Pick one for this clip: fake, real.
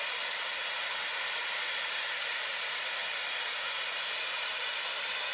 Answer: real